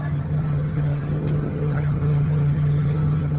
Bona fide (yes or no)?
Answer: no